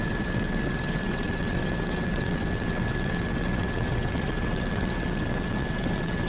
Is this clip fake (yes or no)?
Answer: yes